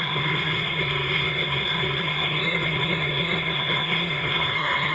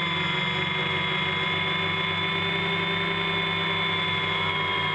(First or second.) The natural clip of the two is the second